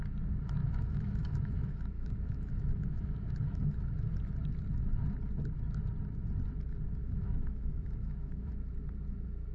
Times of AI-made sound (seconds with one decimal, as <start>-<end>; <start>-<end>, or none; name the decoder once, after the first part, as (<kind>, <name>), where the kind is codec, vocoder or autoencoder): 0.6-4.2 (autoencoder, DAC-VAE); 7.0-8.5